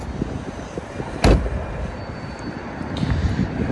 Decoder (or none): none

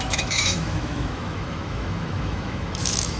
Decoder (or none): autoencoder, DAC-VAE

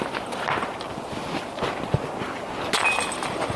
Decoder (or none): none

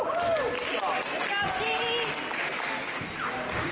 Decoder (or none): none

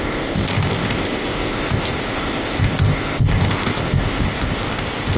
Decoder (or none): codec, ZipCodec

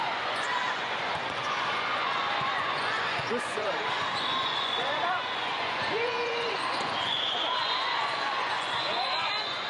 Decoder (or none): vocoder, Vocos